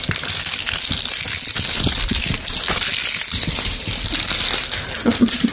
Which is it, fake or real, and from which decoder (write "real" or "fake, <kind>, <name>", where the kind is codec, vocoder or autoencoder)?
real